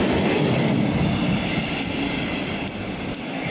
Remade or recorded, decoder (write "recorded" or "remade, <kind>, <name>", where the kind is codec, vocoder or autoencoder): recorded